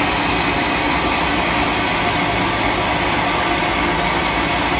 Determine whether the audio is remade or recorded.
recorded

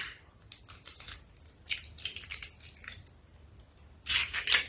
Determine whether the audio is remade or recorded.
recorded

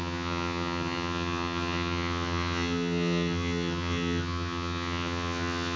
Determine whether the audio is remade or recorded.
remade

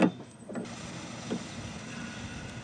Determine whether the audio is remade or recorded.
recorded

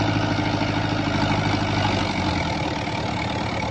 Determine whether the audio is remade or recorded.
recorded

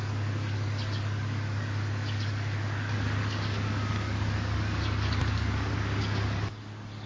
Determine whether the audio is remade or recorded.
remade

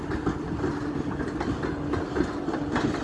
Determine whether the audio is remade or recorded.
recorded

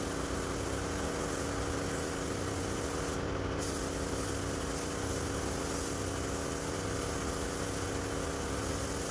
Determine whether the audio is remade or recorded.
recorded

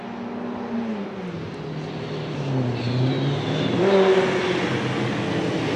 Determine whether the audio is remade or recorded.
recorded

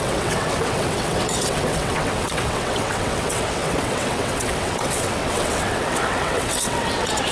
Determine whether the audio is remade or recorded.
remade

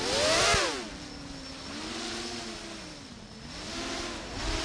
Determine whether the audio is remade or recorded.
recorded